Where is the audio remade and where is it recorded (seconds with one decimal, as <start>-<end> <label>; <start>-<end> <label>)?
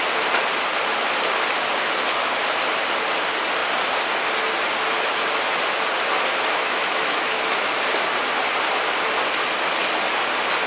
0.0-6.6 recorded; 6.6-7.7 remade; 7.7-10.7 recorded